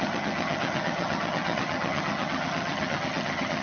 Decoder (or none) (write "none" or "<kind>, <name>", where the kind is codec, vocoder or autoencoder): vocoder, HiFi-GAN